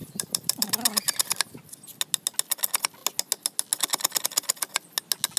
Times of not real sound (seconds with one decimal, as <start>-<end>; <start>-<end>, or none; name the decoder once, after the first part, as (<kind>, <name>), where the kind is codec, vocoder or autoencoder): 0.0-1.4 (vocoder, BigVGAN v2)